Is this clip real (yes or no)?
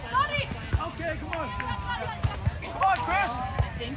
yes